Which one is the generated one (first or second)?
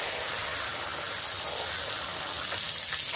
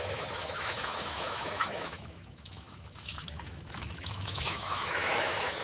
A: second